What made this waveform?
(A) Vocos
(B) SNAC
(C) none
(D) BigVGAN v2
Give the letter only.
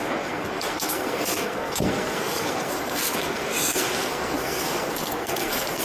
B